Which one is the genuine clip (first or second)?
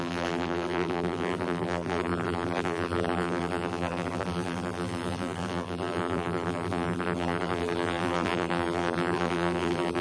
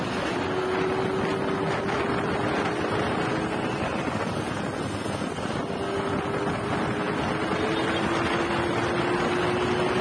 second